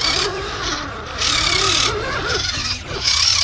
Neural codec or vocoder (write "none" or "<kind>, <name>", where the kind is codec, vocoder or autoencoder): vocoder, BigVGAN v2